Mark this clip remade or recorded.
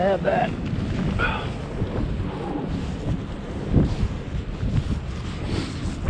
recorded